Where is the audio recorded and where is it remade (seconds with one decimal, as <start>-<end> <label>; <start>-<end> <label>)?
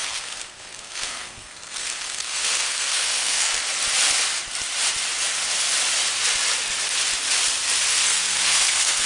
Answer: 0.0-3.6 remade; 3.6-7.9 recorded; 7.9-9.1 remade